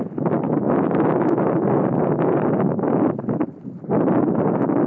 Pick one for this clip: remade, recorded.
recorded